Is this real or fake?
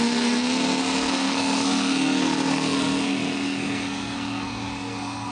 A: fake